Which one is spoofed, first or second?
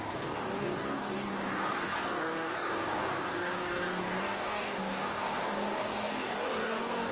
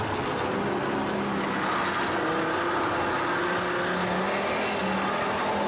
first